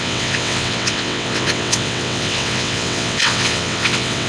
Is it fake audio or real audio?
fake